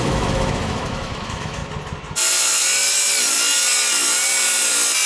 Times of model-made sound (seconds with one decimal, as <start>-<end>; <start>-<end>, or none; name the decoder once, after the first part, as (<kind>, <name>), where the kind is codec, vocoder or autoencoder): 0.0-1.6 (autoencoder, DAC-VAE)